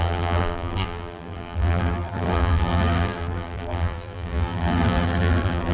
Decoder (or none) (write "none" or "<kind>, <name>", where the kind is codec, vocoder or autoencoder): vocoder, BigVGAN v2